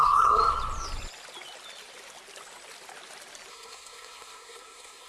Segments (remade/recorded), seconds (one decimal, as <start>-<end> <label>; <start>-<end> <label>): 0.0-0.4 remade; 0.4-3.5 recorded; 3.5-5.1 remade